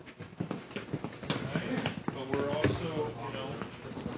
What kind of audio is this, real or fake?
real